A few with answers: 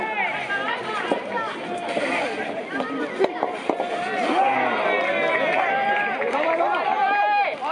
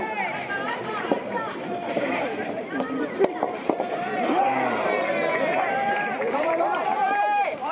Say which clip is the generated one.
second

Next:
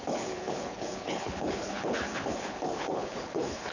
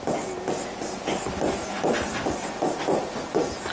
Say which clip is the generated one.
first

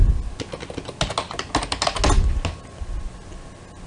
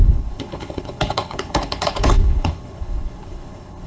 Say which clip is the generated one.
second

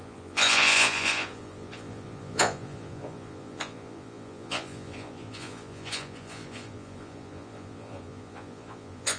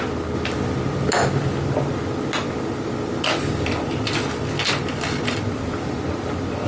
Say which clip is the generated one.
first